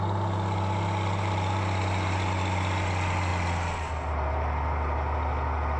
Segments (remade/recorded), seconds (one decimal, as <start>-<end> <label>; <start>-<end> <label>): 0.0-5.8 recorded